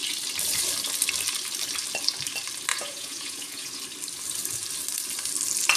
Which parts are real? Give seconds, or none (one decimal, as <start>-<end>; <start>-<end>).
0.0-2.7; 3.8-5.8